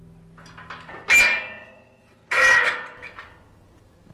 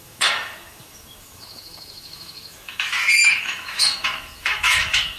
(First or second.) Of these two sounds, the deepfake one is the second